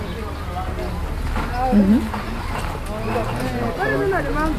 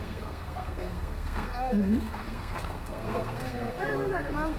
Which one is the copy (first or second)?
second